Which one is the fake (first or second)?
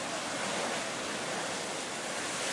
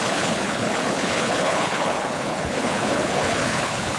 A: second